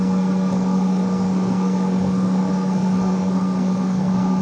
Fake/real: fake